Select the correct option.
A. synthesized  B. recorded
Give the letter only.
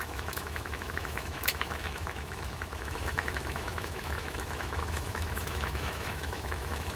A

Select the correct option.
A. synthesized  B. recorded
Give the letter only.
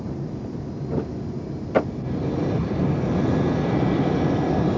A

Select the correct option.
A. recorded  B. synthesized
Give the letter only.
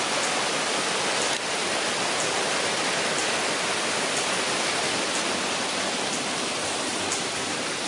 A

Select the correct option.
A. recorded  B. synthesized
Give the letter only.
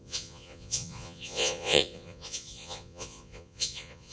B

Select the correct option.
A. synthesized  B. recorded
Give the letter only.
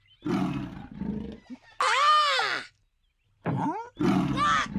B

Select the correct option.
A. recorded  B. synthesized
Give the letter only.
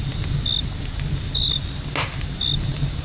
A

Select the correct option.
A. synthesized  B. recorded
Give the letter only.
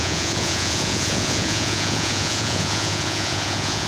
A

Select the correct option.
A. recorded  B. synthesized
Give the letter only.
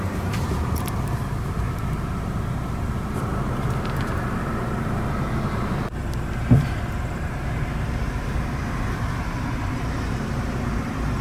B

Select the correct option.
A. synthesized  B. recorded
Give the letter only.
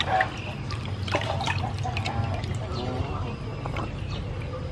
B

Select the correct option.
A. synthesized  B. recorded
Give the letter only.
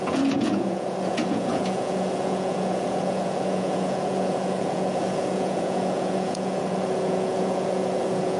A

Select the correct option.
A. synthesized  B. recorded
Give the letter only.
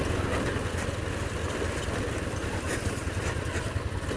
B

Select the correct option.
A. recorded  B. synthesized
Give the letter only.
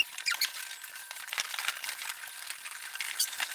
A